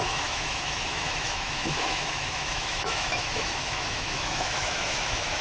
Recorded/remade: remade